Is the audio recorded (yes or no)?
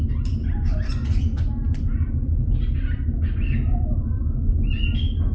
yes